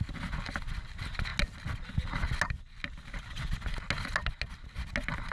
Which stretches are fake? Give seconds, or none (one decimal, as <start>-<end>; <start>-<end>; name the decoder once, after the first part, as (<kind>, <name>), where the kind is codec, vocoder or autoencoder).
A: none